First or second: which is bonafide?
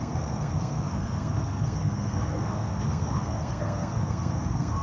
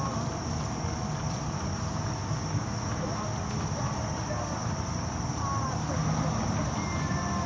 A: second